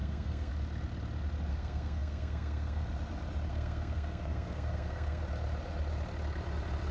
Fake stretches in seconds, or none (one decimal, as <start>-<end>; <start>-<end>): 0.0-0.5; 1.5-2.8; 3.5-5.2